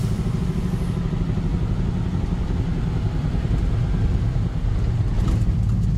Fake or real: real